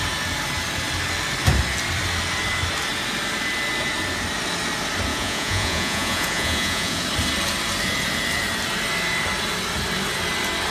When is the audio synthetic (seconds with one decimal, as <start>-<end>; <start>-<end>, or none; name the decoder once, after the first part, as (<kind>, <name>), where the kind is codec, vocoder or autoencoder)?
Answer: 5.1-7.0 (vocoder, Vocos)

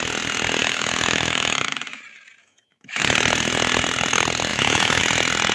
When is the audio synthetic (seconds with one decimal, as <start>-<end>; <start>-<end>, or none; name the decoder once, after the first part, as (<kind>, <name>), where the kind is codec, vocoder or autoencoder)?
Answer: 0.6-2.0 (autoencoder, DAC-VAE); 2.4-3.0; 4.5-5.0

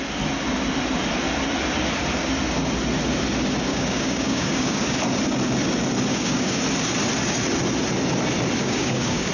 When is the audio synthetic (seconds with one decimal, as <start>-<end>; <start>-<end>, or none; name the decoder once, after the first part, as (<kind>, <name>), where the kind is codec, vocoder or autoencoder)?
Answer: 3.7-4.8 (codec, DAC); 6.1-6.6; 8.6-9.3

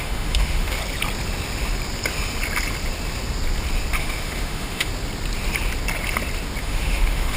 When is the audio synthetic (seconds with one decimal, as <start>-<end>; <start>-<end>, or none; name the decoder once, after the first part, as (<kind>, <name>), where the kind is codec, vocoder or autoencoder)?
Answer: 0.0-0.8 (autoencoder, DAC-VAE); 4.0-4.9; 6.6-7.4